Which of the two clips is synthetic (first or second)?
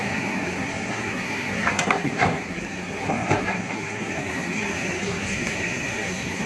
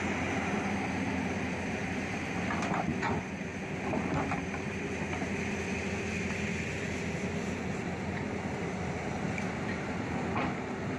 first